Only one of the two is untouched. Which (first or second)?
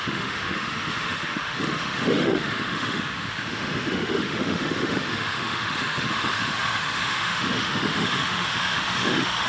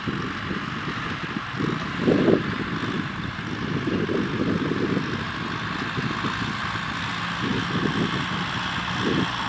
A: second